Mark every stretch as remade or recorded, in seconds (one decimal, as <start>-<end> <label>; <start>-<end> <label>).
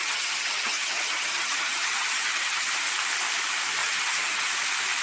0.0-2.8 remade; 2.8-3.8 recorded; 3.8-4.5 remade; 4.5-5.0 recorded